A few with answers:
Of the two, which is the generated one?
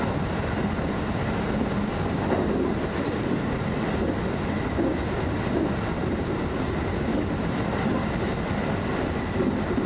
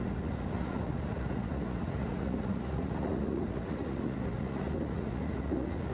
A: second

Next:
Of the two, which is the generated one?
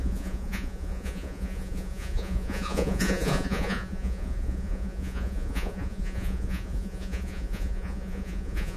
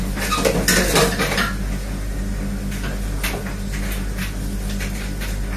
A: first